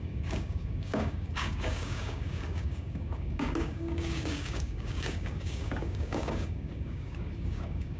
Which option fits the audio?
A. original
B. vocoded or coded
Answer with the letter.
B